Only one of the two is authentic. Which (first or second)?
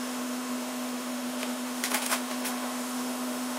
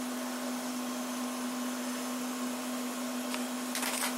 second